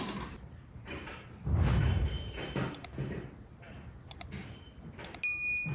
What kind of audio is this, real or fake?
real